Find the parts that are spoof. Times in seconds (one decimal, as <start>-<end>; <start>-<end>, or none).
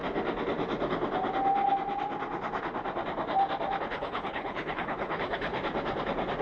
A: 3.8-5.5